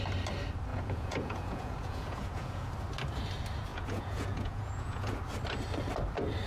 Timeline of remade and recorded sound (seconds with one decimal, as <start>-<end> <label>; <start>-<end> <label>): 0.0-0.7 recorded; 0.7-2.7 remade; 2.7-3.7 recorded; 3.7-5.2 remade; 5.2-6.5 recorded